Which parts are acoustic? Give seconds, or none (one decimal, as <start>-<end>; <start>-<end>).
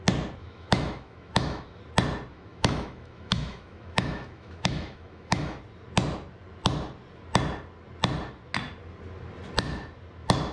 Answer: 0.0-0.4; 1.8-2.3; 5.6-10.5